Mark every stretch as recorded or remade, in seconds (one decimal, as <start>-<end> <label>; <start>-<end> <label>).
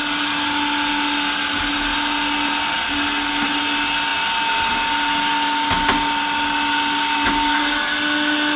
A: 0.0-8.6 recorded